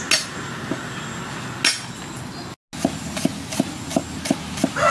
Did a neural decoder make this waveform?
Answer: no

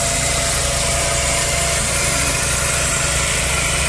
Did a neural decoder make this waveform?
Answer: no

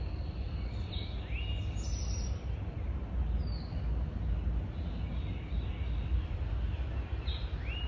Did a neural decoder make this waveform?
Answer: no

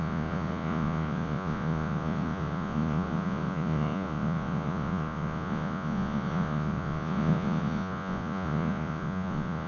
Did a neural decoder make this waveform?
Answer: yes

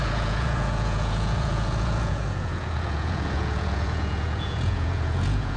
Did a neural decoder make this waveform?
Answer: yes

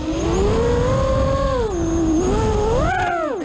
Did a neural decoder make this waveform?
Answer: no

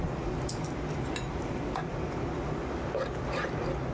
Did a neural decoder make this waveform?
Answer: no